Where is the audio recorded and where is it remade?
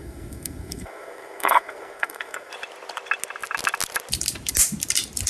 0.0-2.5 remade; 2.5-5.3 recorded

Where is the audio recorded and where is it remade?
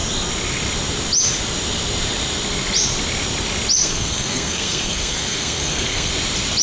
0.0-3.8 recorded; 3.8-6.1 remade; 6.1-6.6 recorded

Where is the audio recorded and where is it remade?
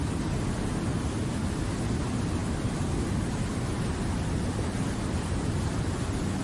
0.0-6.4 recorded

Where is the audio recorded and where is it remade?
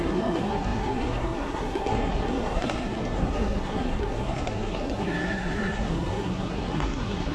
0.0-7.3 remade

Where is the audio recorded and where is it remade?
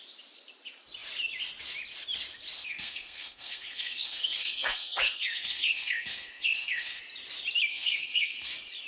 0.0-2.6 recorded; 2.6-7.0 remade; 7.0-7.7 recorded; 7.7-8.5 remade; 8.5-8.9 recorded